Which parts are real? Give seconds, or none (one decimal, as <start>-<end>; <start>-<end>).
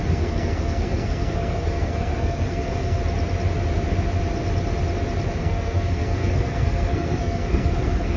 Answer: 3.0-5.4